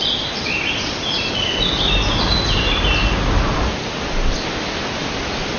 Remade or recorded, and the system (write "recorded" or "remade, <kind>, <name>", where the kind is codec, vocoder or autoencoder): recorded